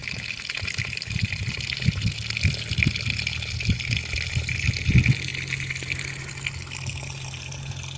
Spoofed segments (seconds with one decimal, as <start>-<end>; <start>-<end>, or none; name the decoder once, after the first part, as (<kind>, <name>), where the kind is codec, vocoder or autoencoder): none